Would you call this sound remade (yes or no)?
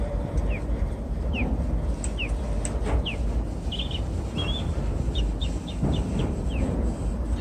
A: no